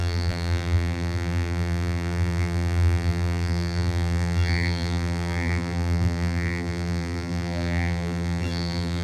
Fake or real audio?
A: fake